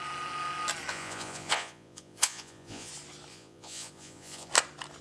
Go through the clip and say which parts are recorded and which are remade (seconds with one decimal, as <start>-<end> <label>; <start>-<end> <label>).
0.0-0.9 recorded; 0.9-2.9 remade; 2.9-3.3 recorded; 3.3-4.5 remade; 4.5-5.0 recorded